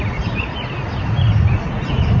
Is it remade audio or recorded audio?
remade